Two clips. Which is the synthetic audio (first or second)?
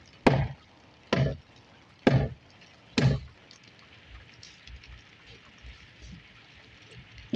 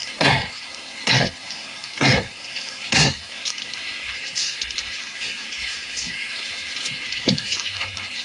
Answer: second